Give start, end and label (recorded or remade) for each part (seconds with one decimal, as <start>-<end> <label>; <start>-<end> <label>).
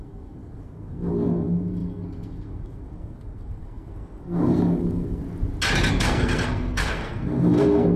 0.0-5.2 remade; 5.2-5.9 recorded; 5.9-8.0 remade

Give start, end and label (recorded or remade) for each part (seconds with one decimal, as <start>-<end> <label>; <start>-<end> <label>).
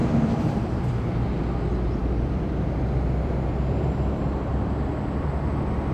0.0-0.9 remade; 0.9-2.0 recorded; 2.0-5.5 remade; 5.5-5.9 recorded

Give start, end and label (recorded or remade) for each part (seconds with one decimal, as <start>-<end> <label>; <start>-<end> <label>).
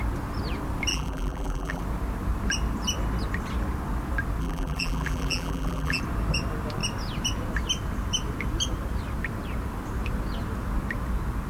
0.0-0.9 recorded; 0.9-1.8 remade; 1.8-4.4 recorded; 4.4-6.0 remade; 6.0-11.5 recorded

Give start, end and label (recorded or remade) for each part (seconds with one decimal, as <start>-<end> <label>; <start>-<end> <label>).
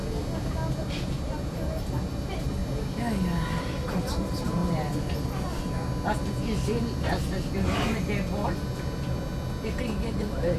0.0-0.8 recorded; 0.8-2.6 remade; 2.6-3.6 recorded; 3.6-4.6 remade; 4.6-9.8 recorded; 9.8-10.6 remade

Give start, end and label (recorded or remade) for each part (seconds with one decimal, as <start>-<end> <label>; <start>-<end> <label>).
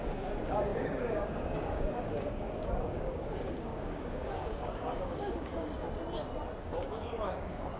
0.0-5.7 remade; 5.7-6.6 recorded; 6.6-7.8 remade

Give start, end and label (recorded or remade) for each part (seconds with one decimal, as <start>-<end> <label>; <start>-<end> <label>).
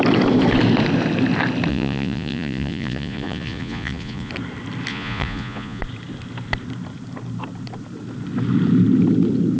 0.0-1.7 recorded; 1.7-4.3 remade; 4.3-4.9 recorded; 4.9-5.8 remade; 5.8-9.6 recorded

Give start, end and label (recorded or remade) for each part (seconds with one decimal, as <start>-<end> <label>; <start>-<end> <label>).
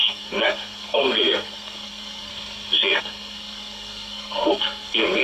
0.0-2.3 remade; 2.3-3.0 recorded; 3.0-5.2 remade